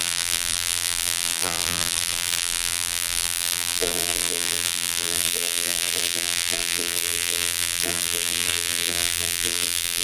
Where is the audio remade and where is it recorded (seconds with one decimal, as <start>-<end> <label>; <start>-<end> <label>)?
0.0-10.0 remade